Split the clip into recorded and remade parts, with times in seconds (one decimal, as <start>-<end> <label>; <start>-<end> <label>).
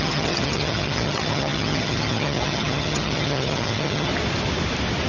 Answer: 0.0-4.1 remade; 4.1-5.1 recorded